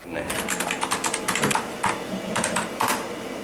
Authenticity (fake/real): real